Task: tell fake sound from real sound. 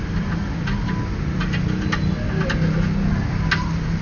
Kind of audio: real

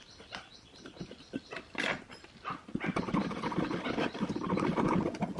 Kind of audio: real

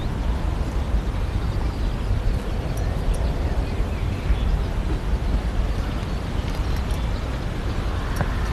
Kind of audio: real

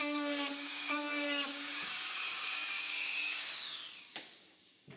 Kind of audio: fake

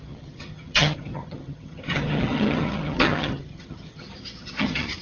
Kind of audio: fake